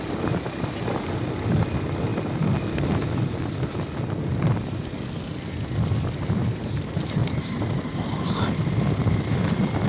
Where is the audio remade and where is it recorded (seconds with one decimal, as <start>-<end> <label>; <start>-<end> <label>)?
0.0-9.9 recorded